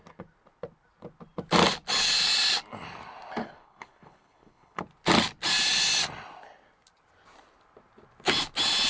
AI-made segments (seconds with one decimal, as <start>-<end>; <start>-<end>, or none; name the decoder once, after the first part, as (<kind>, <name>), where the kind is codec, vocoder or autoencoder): 3.4-4.8 (codec, HILCodec)